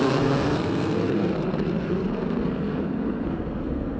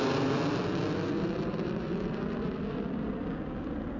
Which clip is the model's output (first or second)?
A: first